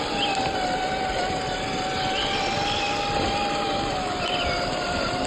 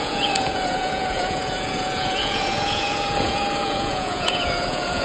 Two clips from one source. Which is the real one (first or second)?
first